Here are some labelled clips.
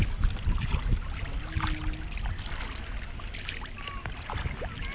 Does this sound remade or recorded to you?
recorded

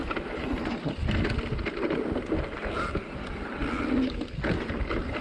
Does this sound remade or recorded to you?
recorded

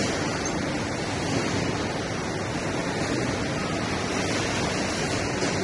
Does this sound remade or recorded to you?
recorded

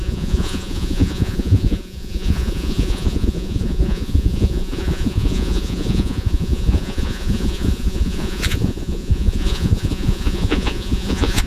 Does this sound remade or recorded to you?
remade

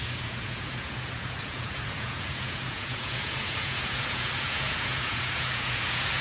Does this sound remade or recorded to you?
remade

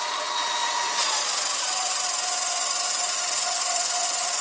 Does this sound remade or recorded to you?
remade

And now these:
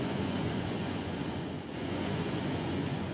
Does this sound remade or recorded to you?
remade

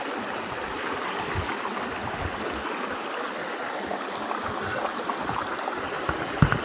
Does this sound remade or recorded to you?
recorded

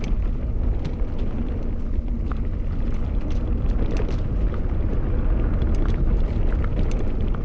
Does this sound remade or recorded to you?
recorded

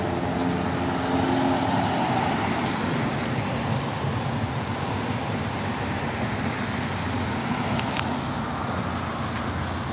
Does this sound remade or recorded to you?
recorded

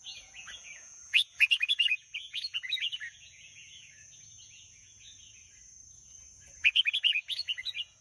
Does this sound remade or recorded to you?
remade